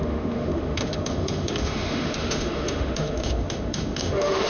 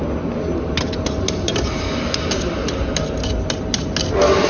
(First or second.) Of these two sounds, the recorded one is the second